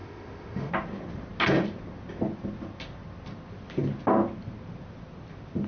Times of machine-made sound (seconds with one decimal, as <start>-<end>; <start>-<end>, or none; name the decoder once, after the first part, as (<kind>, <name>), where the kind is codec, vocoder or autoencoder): 0.0-0.7 (autoencoder, DAC-VAE)